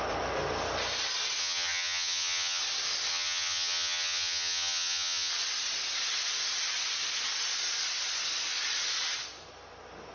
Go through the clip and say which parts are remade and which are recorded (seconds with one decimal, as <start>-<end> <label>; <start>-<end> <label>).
0.0-1.4 recorded; 1.4-2.6 remade; 2.6-3.1 recorded; 3.1-5.3 remade; 5.3-10.1 recorded